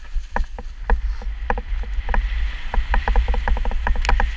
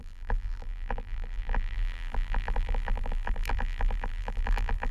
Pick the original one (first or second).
first